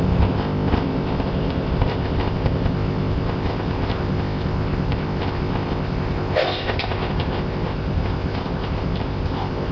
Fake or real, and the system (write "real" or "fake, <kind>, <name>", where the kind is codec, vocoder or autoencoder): fake, codec, ZipCodec